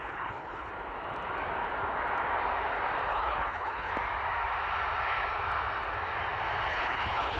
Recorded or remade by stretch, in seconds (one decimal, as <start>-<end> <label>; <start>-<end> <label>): 0.0-0.7 remade; 0.7-3.1 recorded; 3.1-3.9 remade; 3.9-6.7 recorded; 6.7-7.4 remade